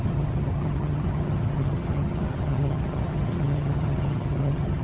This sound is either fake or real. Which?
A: fake